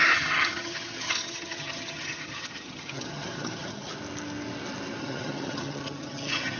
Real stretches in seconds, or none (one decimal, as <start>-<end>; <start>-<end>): 3.9-5.0